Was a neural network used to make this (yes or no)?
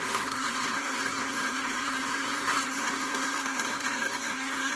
yes